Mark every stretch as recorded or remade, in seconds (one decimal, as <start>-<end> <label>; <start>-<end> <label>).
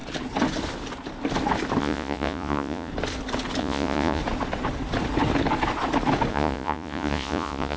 0.0-1.8 recorded; 1.8-2.9 remade; 2.9-3.6 recorded; 3.6-4.2 remade; 4.2-6.3 recorded; 6.3-7.8 remade